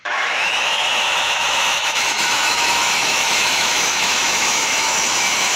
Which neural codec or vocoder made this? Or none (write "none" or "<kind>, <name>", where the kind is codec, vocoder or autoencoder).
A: autoencoder, DAC-VAE